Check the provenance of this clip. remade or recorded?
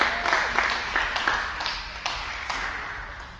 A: recorded